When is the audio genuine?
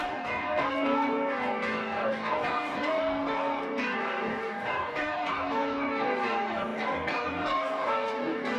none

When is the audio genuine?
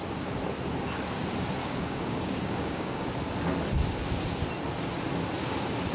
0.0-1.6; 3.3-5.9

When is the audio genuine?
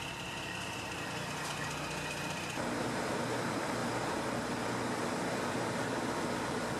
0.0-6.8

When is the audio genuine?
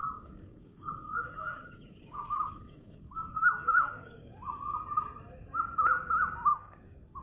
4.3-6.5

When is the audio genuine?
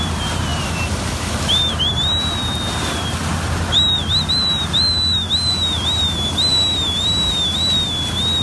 0.0-8.4